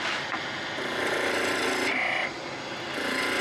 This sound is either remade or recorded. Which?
recorded